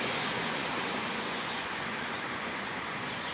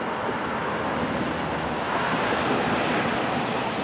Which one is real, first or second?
second